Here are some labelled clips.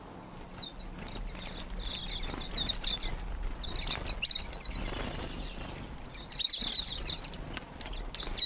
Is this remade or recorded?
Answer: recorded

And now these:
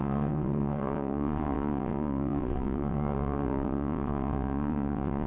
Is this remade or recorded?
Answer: remade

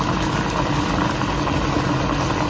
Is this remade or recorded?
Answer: recorded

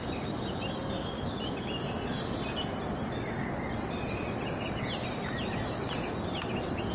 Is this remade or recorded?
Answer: recorded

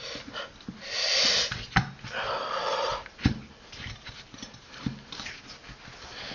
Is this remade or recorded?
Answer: recorded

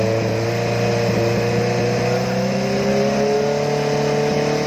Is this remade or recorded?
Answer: recorded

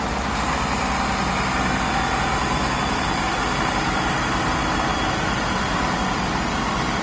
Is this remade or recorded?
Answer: recorded